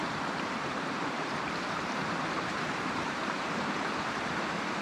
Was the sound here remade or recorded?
remade